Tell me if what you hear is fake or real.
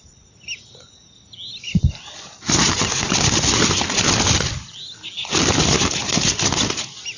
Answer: real